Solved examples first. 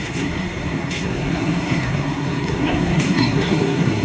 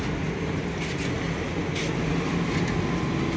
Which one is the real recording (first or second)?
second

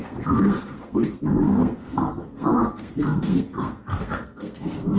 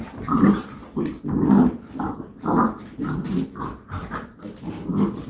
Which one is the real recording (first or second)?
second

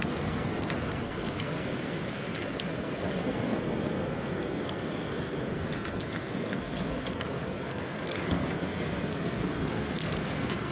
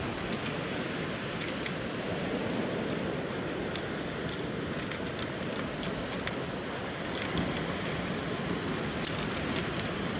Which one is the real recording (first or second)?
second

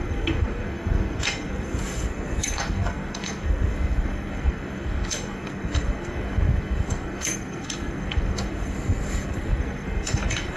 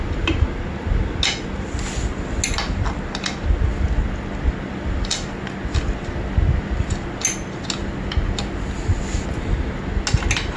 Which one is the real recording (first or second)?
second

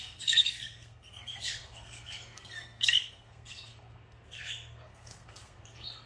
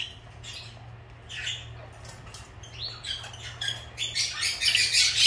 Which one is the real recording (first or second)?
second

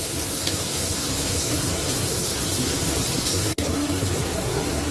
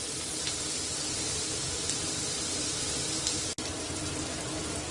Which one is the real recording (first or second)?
second